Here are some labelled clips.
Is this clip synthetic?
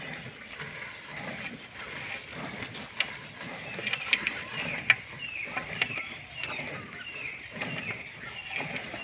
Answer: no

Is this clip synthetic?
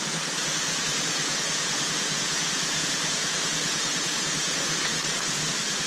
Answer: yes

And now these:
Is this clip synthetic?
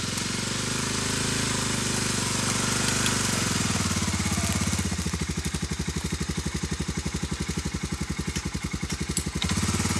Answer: no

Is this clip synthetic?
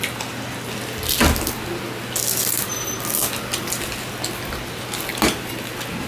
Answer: no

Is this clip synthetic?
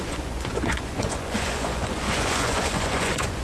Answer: yes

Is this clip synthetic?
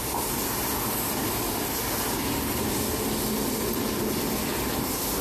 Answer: no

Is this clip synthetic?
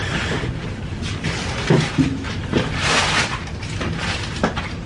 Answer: no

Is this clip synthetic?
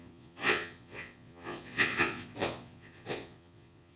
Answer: yes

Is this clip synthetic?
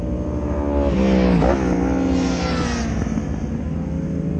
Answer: no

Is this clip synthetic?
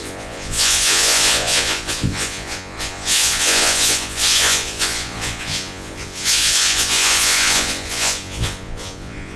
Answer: yes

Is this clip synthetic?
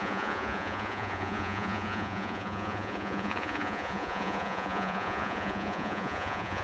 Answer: yes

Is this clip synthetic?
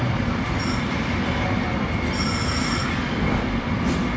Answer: no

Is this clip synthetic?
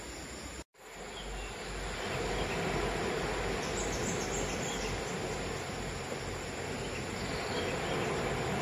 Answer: no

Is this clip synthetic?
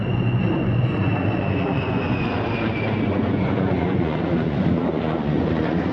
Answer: yes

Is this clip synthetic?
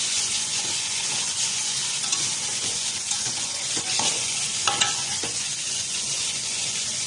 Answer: yes